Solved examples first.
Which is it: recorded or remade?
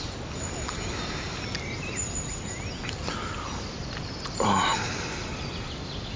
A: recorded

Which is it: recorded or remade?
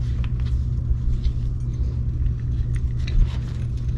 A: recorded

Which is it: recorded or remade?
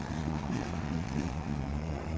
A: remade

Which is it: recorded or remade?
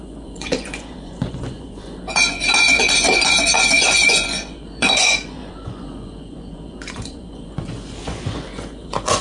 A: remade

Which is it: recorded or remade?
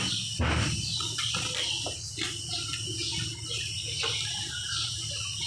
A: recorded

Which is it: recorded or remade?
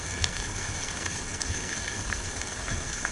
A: remade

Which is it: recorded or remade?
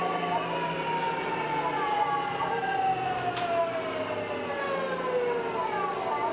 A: recorded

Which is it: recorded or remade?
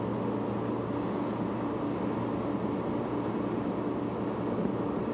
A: recorded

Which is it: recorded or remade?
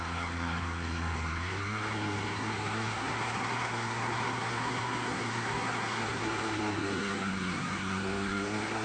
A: remade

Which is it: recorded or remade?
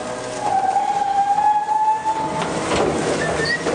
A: recorded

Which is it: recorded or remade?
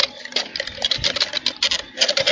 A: recorded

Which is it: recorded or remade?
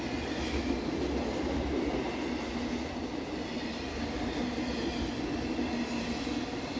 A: recorded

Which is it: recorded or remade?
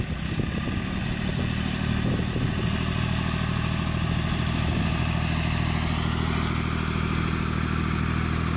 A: recorded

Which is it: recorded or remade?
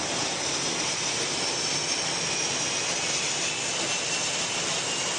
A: recorded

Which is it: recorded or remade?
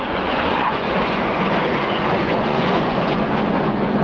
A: remade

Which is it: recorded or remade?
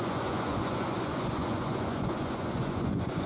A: remade